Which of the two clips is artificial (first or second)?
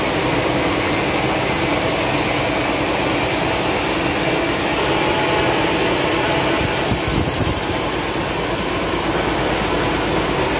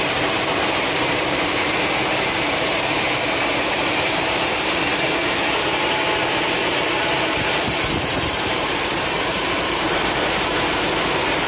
second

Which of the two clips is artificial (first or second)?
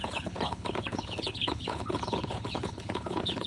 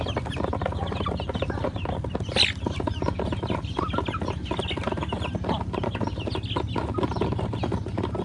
first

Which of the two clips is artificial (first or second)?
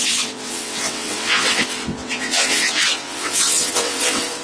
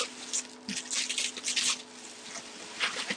first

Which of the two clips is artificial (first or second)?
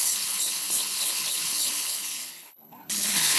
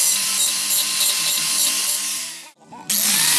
first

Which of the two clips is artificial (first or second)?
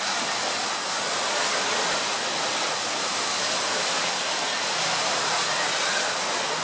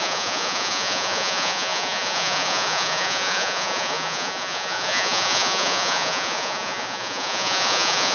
second